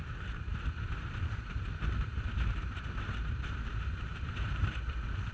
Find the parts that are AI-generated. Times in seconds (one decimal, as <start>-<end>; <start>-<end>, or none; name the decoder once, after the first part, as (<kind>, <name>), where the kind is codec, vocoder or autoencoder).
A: 0.0-5.3 (vocoder, BigVGAN v2)